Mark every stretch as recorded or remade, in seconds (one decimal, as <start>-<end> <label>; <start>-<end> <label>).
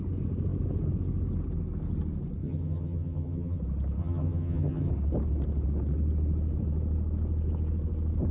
0.0-2.4 recorded; 2.4-3.6 remade; 3.6-4.0 recorded; 4.0-4.9 remade; 4.9-8.3 recorded